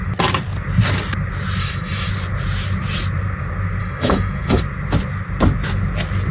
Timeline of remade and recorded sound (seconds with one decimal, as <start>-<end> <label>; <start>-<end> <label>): 0.0-1.6 recorded; 1.6-2.1 remade; 2.1-3.8 recorded; 3.8-4.6 remade; 4.6-6.3 recorded